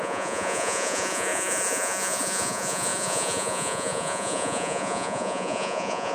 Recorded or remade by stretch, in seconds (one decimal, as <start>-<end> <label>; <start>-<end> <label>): 0.0-6.1 remade